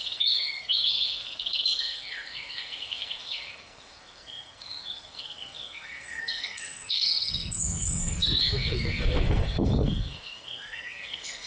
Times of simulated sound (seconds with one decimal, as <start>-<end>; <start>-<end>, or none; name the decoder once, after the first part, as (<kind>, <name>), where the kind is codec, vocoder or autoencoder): 0.0-11.5 (codec, SNAC)